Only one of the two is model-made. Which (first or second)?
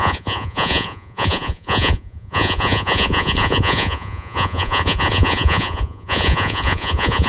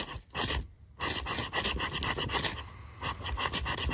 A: first